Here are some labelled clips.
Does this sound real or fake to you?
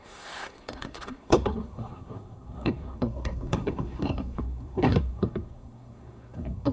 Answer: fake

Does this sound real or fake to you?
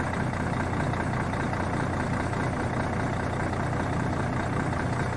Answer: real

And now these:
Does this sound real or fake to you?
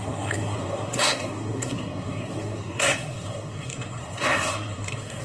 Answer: fake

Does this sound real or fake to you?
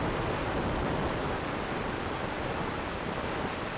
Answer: real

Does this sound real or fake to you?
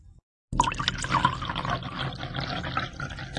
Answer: real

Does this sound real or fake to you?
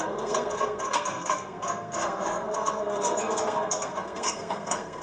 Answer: fake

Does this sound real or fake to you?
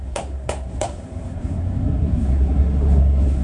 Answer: fake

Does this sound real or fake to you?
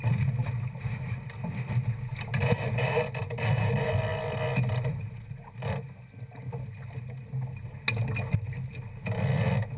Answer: real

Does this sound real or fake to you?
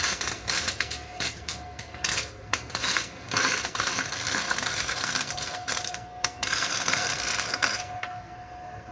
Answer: fake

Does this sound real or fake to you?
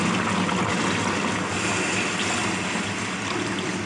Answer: real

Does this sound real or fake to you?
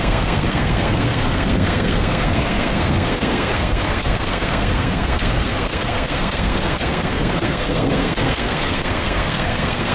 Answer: fake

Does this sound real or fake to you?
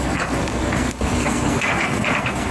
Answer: fake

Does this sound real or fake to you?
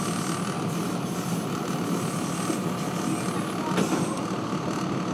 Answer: real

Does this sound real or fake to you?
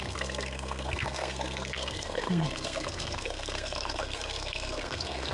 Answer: fake